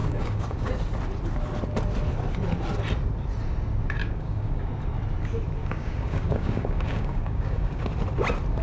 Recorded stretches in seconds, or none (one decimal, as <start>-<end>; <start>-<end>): 0.7-4.0; 4.7-5.6; 7.8-8.6